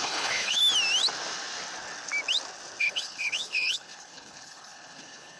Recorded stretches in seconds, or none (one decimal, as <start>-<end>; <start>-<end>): 0.6-2.8